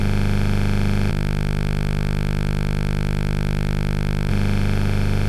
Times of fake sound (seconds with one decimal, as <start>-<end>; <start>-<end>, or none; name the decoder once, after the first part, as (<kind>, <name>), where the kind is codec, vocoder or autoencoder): 0.0-1.1 (autoencoder, DAC-VAE); 4.3-5.3